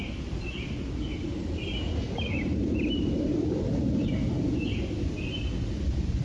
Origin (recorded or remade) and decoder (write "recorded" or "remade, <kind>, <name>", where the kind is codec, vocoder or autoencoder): recorded